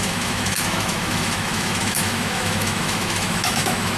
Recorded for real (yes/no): no